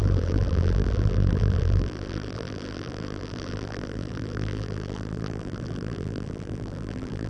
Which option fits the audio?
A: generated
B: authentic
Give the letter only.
A